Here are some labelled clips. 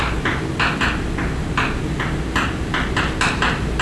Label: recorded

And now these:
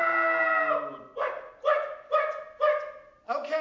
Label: recorded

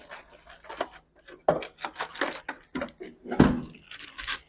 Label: recorded